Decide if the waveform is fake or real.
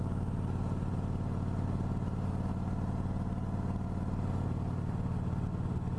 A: real